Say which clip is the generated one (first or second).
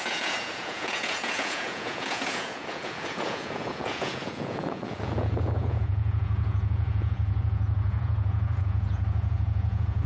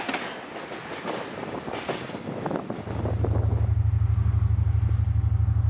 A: first